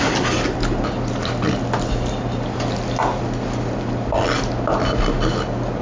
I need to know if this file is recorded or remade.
recorded